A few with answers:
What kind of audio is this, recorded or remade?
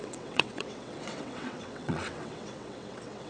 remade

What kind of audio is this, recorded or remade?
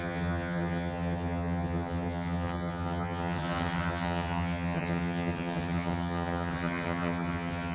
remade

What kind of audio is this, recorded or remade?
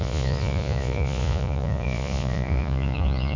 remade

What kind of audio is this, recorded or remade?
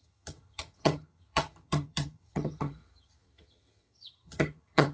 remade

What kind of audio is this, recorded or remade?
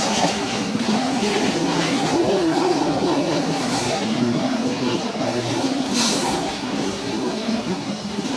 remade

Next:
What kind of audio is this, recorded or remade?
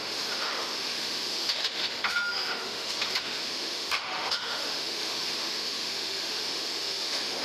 remade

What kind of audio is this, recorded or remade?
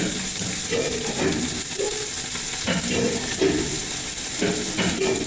remade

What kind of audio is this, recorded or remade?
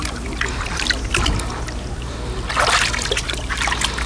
recorded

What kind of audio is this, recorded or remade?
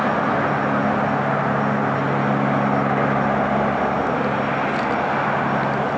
recorded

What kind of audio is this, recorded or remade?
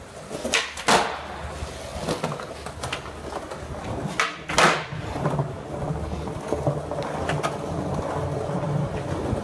recorded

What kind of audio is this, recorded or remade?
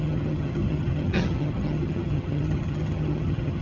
remade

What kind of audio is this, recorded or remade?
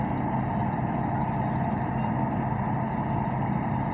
recorded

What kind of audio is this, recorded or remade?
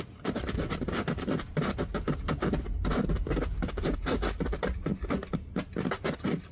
recorded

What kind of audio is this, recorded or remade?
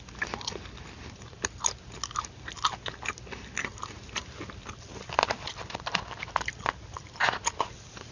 recorded